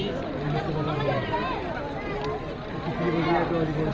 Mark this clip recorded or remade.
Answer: recorded